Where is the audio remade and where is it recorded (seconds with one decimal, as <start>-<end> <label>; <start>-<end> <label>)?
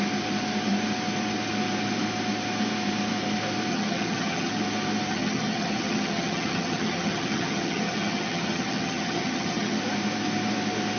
0.0-3.7 recorded; 3.7-4.5 remade; 4.5-5.1 recorded; 5.1-9.8 remade; 9.8-11.0 recorded